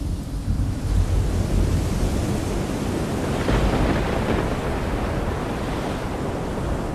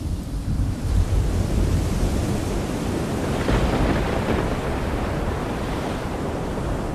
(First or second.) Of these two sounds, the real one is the first